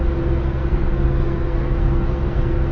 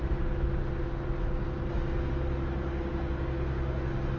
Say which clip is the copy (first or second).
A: first